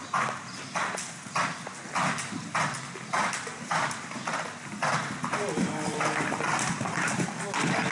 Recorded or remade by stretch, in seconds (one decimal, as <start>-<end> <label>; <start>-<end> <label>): 0.0-7.9 recorded